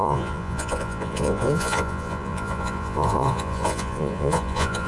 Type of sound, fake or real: fake